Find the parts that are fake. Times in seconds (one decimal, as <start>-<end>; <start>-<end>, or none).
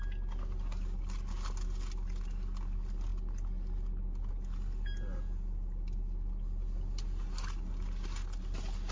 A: none